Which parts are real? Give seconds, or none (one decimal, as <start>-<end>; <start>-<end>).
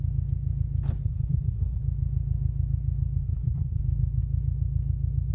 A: 0.0-1.0; 1.8-3.2; 3.8-5.3